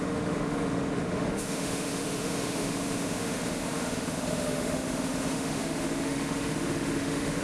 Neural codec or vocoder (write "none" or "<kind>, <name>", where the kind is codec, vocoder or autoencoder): autoencoder, DAC-VAE